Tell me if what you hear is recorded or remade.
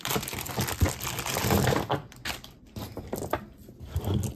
recorded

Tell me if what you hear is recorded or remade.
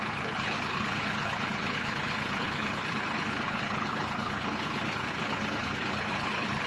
remade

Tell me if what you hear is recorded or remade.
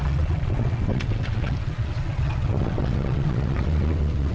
remade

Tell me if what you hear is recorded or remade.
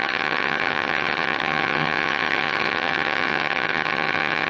remade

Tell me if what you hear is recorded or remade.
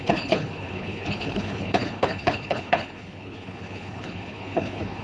remade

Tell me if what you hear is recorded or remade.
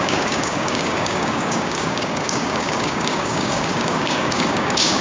remade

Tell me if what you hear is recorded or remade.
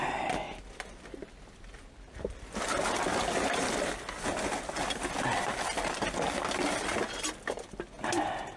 recorded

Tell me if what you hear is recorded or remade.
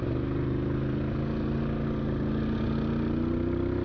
recorded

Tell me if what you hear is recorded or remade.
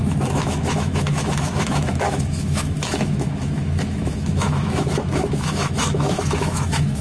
remade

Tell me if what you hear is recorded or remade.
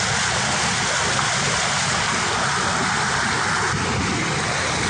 recorded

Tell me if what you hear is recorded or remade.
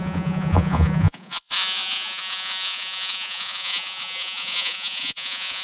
remade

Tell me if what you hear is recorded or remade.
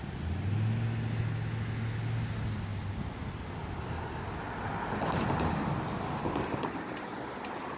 recorded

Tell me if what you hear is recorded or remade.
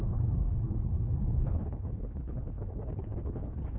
remade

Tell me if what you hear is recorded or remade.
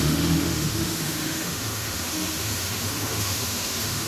remade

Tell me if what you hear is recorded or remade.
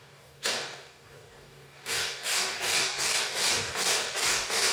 remade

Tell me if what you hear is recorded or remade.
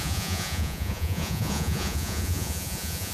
remade